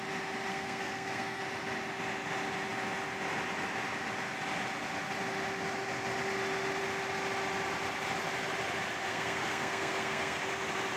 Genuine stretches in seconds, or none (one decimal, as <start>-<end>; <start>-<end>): 0.0-0.5; 1.4-9.1; 10.4-11.0